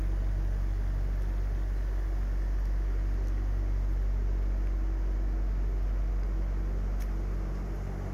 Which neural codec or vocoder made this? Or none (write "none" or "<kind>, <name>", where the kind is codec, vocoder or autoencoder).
none